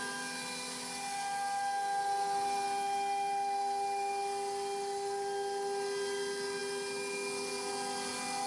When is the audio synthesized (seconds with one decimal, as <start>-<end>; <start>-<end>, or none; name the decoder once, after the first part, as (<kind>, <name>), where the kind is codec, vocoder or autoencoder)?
none